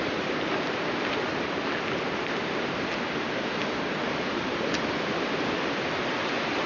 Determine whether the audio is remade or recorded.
recorded